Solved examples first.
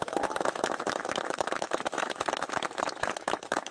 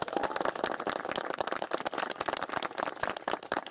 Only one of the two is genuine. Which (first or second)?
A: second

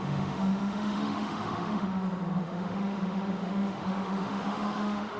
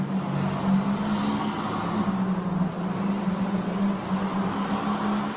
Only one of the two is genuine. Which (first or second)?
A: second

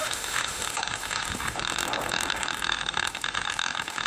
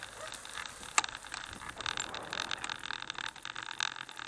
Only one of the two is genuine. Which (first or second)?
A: second